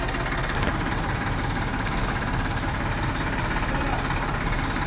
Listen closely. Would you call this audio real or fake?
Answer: fake